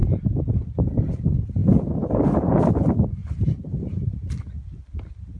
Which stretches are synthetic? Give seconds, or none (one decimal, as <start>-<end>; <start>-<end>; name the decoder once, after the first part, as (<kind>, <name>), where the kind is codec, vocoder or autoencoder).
1.6-2.5 (vocoder, BigVGAN v2); 3.2-3.7